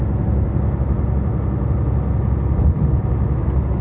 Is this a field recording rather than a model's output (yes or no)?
yes